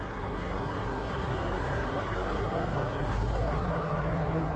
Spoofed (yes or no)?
yes